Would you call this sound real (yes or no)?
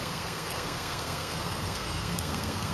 no